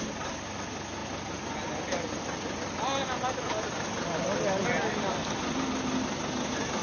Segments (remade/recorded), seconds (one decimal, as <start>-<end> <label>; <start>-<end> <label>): 0.0-6.8 recorded